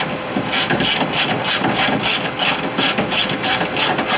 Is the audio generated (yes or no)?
no